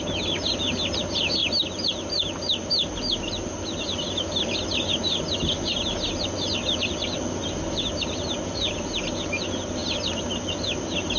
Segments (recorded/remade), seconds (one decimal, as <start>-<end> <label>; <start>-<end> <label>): 0.0-11.2 recorded